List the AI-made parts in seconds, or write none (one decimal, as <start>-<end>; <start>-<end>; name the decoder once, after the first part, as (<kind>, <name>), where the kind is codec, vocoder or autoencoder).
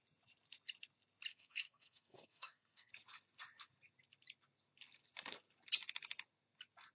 1.3-2.9 (codec, SNAC)